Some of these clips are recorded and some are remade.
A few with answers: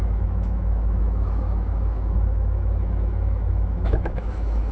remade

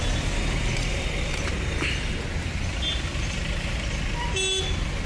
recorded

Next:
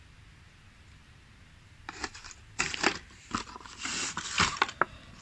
recorded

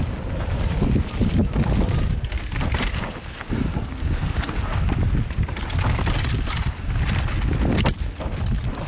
recorded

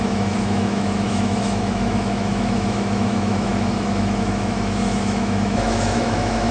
remade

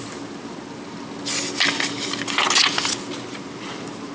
recorded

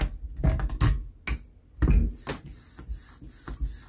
recorded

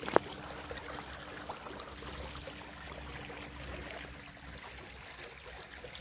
recorded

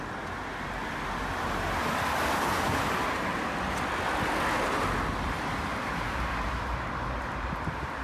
recorded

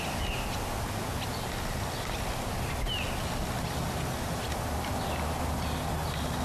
recorded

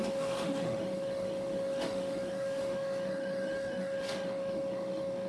remade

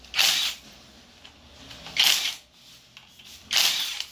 recorded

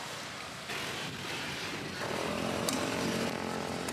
recorded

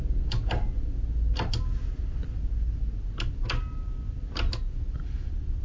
recorded